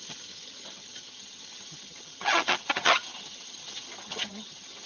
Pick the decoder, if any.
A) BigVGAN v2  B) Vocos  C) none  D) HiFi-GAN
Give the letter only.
D